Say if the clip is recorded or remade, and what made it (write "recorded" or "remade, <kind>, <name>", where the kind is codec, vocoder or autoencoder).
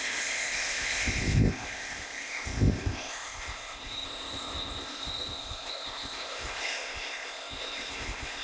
remade, codec, ZipCodec